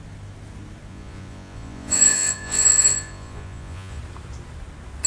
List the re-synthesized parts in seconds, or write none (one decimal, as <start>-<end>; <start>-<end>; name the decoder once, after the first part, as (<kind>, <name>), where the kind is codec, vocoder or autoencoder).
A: 0.9-4.0 (vocoder, Vocos)